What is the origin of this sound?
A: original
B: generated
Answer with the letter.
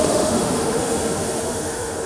B